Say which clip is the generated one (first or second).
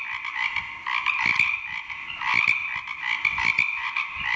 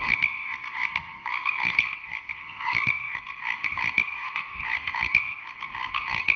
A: second